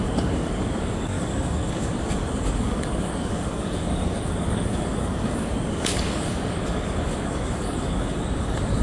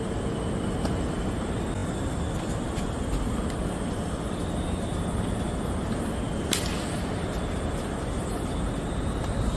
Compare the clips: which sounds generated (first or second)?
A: first